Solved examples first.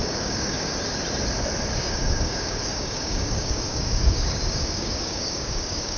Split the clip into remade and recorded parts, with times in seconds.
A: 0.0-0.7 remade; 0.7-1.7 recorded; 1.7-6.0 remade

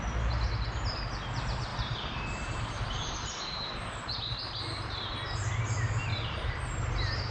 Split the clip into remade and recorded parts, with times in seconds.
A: 0.0-1.7 recorded; 1.7-5.1 remade; 5.1-6.1 recorded; 6.1-6.6 remade; 6.6-7.3 recorded

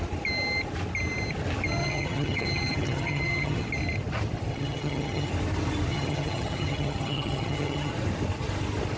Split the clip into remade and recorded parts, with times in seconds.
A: 0.0-1.8 recorded; 1.8-3.7 remade; 3.7-4.5 recorded; 4.5-5.3 remade; 5.3-5.9 recorded; 5.9-7.9 remade; 7.9-9.0 recorded

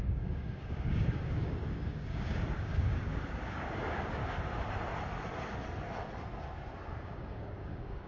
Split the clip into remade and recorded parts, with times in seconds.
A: 0.0-4.2 remade; 4.2-6.9 recorded; 6.9-8.1 remade

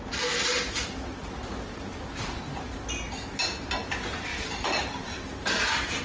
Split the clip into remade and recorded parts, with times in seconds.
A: 0.0-1.5 recorded; 1.5-2.2 remade; 2.2-4.3 recorded; 4.3-6.0 remade